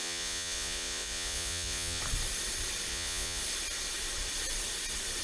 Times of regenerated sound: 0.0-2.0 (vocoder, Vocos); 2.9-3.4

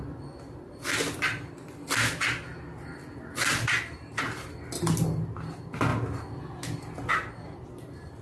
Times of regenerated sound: none

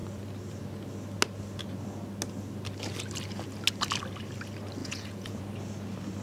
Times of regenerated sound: 4.8-5.4 (vocoder, Vocos)

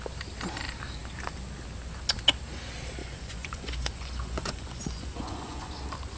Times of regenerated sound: 3.0-5.7 (vocoder, Vocos)